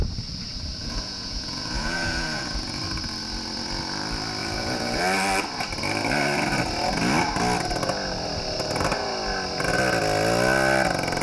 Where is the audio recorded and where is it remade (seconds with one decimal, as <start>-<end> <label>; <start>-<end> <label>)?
0.0-0.8 recorded; 0.8-2.8 remade; 2.8-4.4 recorded; 4.4-5.0 remade; 5.0-11.2 recorded